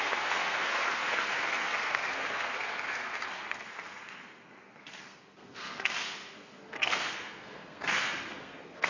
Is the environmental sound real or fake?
fake